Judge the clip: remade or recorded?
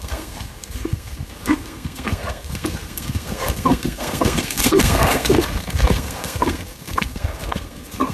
remade